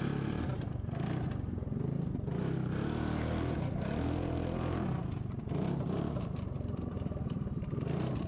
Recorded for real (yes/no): yes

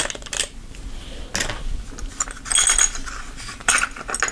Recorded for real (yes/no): yes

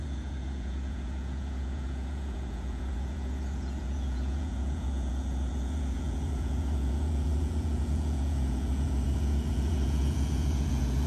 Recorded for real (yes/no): no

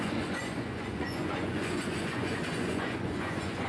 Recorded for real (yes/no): no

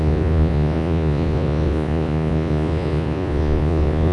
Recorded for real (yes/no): no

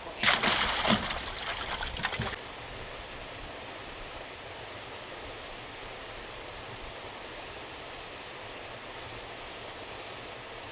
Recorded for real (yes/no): yes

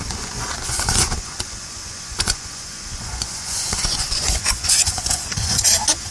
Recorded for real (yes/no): no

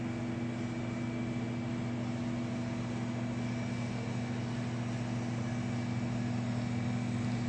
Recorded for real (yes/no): yes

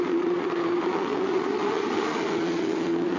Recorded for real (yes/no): no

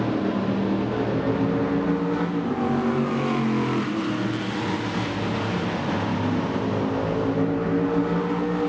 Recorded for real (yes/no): yes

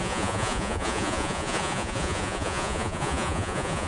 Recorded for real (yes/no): no